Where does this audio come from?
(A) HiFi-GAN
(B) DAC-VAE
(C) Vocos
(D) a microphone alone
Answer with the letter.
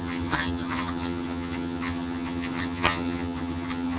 A